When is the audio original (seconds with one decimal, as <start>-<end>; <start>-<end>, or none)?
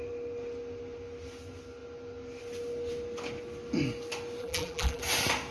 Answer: 0.0-4.4; 5.0-5.5